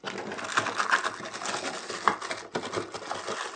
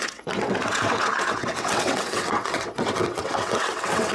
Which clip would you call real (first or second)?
first